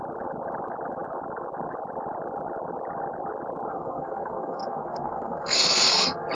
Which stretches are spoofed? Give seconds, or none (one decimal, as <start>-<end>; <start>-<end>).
3.7-6.3